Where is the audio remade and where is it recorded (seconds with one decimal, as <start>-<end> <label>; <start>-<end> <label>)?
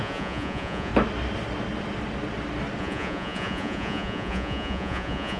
0.0-0.9 remade; 0.9-2.8 recorded; 2.8-5.4 remade